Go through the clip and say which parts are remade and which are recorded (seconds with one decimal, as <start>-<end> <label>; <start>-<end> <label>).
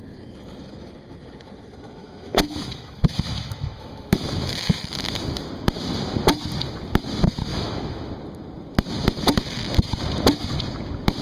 0.0-2.0 recorded; 2.0-5.4 remade; 5.4-7.5 recorded; 7.5-8.1 remade; 8.1-11.2 recorded